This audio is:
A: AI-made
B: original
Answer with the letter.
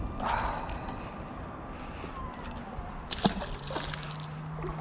B